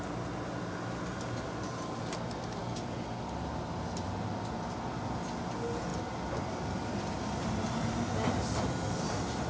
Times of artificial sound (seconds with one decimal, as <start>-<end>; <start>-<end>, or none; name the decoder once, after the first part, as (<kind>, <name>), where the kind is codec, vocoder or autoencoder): none